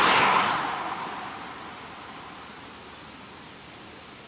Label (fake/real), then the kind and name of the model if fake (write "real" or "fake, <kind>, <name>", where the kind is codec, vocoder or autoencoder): real